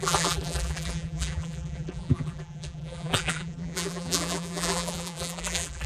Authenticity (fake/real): fake